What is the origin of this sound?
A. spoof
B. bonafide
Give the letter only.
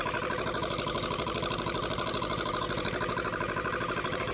A